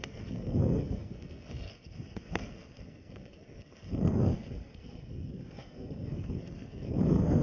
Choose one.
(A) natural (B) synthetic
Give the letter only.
B